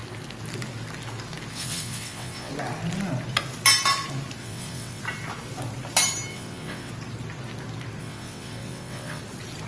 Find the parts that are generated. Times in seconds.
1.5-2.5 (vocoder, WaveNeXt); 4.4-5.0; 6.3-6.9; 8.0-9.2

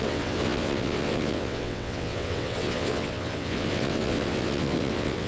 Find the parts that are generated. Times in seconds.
0.0-5.3 (vocoder, WaveNeXt)

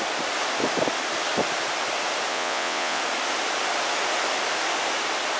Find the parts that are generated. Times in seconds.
2.3-3.0 (vocoder, WaveNeXt)

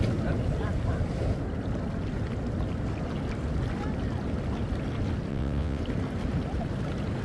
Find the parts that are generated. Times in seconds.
5.3-5.8 (vocoder, WaveNeXt)